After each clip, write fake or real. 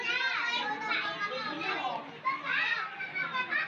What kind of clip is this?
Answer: real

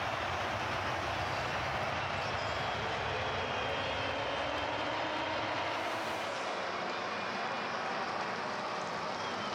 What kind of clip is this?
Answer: real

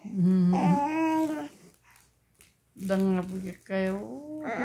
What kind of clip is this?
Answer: real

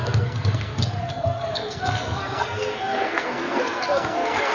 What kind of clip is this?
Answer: fake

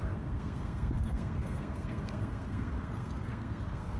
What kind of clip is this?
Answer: fake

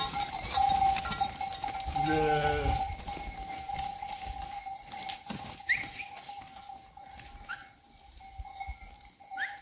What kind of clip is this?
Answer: real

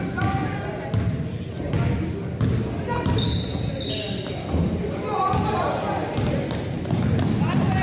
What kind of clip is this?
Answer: real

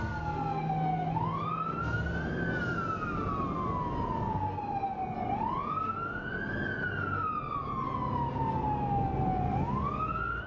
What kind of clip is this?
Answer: real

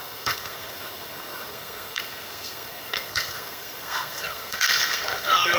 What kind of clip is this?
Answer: fake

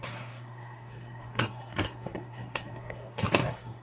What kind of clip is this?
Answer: fake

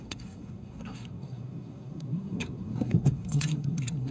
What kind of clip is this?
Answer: fake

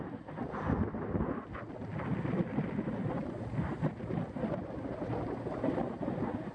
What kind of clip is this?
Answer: real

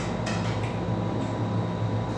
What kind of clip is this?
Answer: real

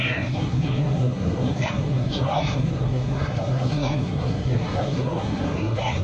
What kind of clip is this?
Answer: fake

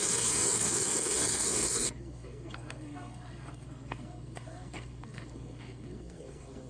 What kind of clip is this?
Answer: fake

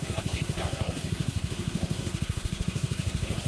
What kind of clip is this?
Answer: fake